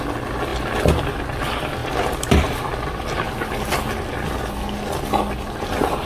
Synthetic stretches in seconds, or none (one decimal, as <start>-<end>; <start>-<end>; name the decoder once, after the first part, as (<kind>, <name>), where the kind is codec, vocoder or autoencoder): none

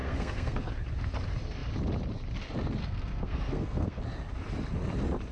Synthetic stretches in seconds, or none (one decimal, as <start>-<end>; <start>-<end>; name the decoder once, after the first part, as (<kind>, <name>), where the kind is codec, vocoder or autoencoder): 0.0-0.7 (codec, SNAC); 2.8-4.0

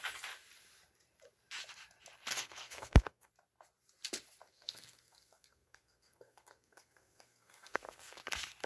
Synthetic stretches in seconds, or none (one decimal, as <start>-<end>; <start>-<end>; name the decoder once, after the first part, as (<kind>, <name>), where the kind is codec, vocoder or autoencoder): 2.3-3.3 (codec, SNAC); 4.5-8.2